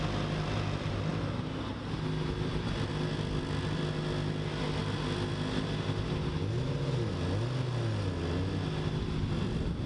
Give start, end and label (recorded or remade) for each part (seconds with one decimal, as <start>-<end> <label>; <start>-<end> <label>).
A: 0.0-9.9 recorded